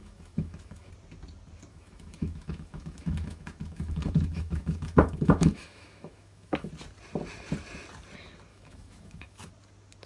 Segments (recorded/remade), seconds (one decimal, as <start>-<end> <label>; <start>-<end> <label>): 0.0-0.9 remade; 0.9-1.7 recorded; 1.7-6.7 remade; 6.7-8.5 recorded; 8.5-9.5 remade; 9.5-10.1 recorded